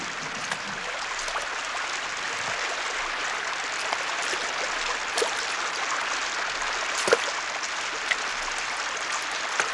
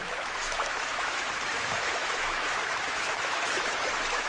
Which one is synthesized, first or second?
second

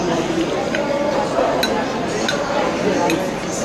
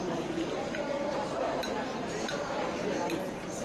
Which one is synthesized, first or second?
second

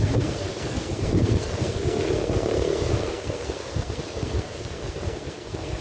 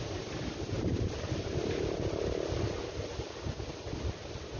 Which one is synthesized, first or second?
first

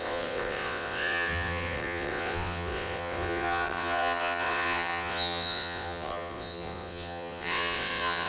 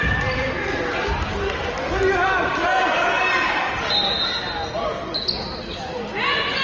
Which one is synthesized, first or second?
first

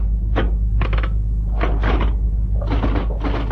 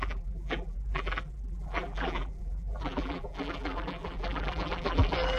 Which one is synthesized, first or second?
second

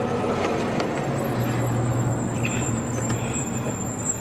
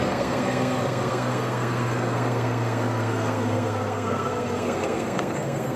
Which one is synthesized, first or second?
second